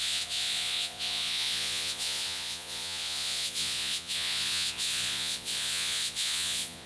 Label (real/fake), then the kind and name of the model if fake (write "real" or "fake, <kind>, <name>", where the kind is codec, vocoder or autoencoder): fake, vocoder, Vocos